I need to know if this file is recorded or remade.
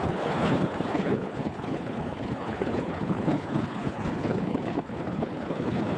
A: remade